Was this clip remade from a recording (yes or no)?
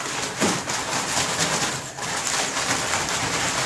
no